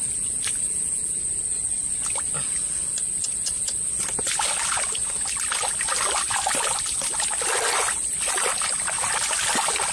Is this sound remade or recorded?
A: recorded